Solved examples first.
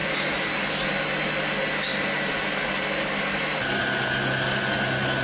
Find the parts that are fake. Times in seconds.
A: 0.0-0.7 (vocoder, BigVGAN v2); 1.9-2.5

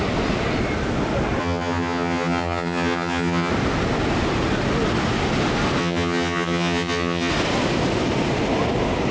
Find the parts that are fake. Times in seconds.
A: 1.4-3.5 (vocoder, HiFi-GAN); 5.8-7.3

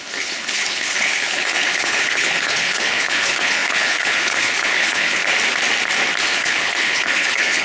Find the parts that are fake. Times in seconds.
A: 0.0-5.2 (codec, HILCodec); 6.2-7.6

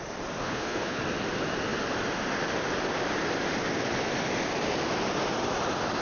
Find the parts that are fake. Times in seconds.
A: 0.4-1.0 (codec, HILCodec)